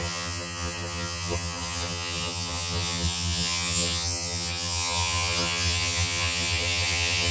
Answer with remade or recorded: remade